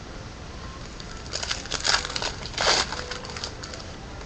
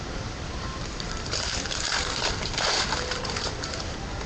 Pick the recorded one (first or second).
first